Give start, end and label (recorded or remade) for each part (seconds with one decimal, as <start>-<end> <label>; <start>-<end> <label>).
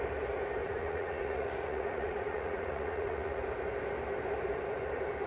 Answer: 0.0-0.6 recorded; 0.6-3.4 remade; 3.4-5.3 recorded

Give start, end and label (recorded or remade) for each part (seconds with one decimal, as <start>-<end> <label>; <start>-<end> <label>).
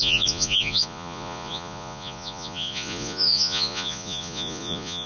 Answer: 0.0-5.1 remade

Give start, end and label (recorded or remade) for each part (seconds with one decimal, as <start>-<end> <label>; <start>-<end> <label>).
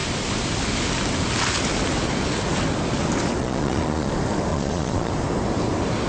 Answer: 0.0-3.4 recorded; 3.4-4.1 remade; 4.1-4.5 recorded; 4.5-5.1 remade; 5.1-6.1 recorded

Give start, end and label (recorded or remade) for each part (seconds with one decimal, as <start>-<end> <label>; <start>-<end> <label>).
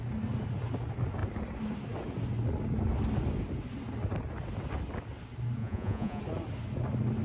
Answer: 0.0-5.6 recorded; 5.6-6.2 remade; 6.2-7.2 recorded